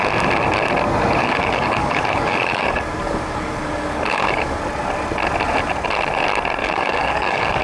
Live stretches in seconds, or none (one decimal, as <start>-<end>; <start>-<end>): 0.0-1.2; 4.6-6.6